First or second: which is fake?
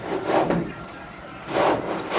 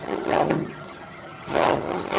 second